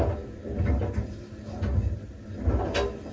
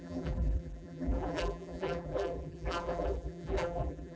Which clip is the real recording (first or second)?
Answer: first